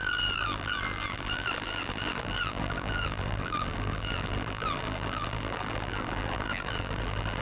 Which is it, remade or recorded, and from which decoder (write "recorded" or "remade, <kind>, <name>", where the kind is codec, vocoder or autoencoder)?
remade, vocoder, BigVGAN v2